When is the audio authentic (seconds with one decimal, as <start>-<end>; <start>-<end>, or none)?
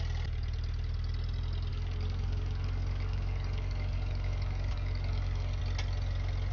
0.0-1.7; 5.6-6.5